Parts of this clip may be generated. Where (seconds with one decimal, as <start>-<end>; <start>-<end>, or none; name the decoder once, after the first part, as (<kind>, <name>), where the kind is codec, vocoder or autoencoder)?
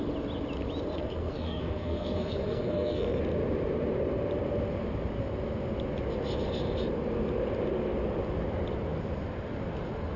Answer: 0.9-3.2 (codec, SNAC)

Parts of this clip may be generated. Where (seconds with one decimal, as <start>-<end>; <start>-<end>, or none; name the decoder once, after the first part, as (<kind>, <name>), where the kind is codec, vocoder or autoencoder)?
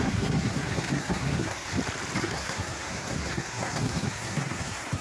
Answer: 0.0-1.7 (codec, SNAC); 2.2-5.0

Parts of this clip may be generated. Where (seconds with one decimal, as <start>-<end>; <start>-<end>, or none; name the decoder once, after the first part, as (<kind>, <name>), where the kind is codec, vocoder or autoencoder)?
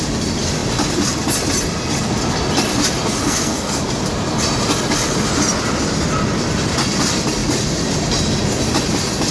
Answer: 3.2-3.8 (codec, SNAC)